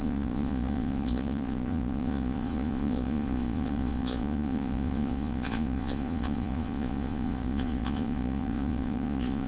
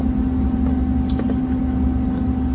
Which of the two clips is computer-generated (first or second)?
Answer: first